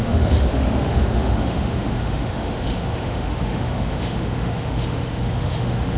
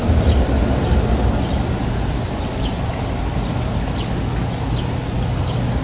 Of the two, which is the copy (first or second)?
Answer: first